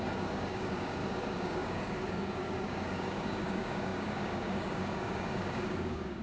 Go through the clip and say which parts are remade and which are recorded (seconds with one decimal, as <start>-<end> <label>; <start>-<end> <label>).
0.0-6.2 remade